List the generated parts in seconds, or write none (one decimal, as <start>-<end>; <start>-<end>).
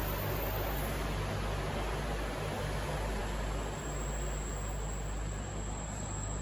none